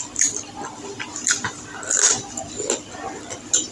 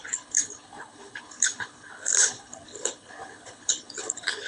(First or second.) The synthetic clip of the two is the second